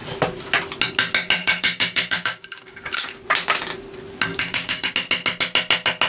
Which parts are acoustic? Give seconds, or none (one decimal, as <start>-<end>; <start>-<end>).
0.0-1.4; 3.1-4.3; 4.9-6.1